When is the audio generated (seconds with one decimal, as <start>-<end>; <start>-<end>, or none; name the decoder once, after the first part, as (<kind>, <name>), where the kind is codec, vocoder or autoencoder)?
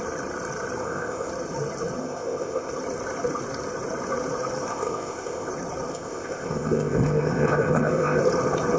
0.8-1.3 (codec, ZipCodec); 2.0-2.7; 4.7-5.5; 5.9-8.2